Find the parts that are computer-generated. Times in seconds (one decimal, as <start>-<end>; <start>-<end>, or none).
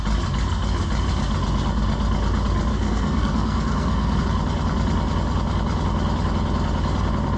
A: 2.7-4.2